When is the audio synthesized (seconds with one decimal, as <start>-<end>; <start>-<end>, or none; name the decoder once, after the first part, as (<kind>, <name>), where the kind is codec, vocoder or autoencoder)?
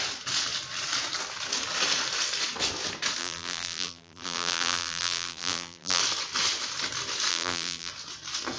3.2-6.0 (vocoder, BigVGAN v2); 7.3-7.9